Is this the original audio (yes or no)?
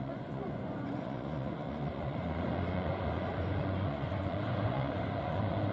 no